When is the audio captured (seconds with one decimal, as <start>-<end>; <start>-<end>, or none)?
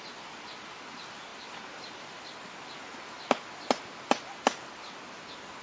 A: 0.0-5.6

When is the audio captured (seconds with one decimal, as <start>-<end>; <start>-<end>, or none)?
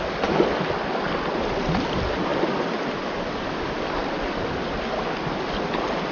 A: 0.0-6.1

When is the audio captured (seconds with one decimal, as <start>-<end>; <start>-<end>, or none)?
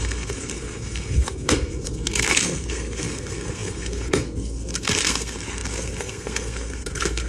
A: none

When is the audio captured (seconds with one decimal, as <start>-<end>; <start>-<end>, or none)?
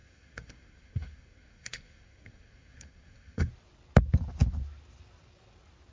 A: 3.5-5.9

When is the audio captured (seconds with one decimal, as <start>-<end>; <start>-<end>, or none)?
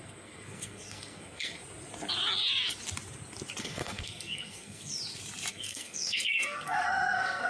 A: 1.6-3.6; 4.9-5.5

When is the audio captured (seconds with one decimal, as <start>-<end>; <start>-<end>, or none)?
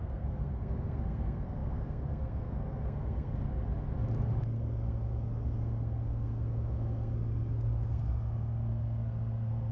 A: 3.5-4.4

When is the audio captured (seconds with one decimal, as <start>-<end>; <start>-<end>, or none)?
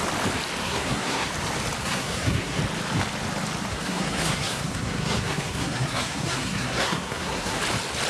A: 0.0-0.6; 1.3-1.8; 2.6-3.7; 7.6-8.1